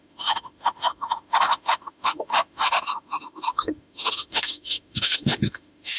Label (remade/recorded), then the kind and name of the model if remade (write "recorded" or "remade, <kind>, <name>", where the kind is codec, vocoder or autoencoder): remade, autoencoder, DAC-VAE